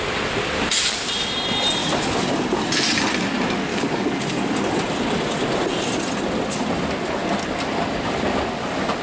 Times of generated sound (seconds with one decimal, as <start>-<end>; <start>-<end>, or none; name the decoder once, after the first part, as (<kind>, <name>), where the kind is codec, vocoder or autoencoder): 1.8-2.6 (codec, DAC); 3.7-4.7